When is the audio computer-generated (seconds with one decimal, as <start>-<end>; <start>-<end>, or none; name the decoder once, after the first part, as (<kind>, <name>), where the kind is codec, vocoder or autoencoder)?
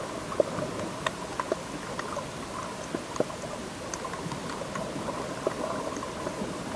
none